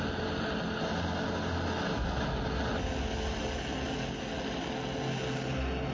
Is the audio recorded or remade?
recorded